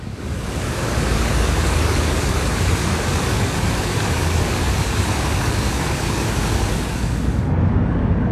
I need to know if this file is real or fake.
fake